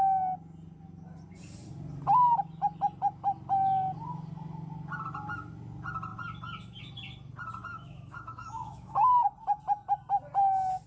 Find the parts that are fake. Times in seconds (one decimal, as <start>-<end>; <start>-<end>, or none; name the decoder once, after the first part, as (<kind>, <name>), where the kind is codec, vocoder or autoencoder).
7.7-9.3 (autoencoder, DAC-VAE)